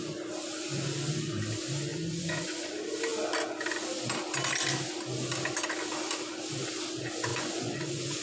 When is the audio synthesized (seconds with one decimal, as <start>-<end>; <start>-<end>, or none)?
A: 1.9-2.7; 7.3-8.2